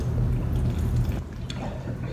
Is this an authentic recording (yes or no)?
yes